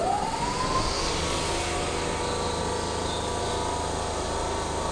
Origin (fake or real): real